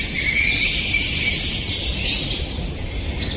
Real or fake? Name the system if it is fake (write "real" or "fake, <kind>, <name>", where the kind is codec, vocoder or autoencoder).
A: real